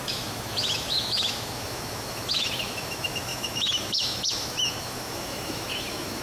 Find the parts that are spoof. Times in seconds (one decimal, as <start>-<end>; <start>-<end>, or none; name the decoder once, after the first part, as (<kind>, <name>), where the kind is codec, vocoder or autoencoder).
0.0-6.2 (autoencoder, DAC-VAE)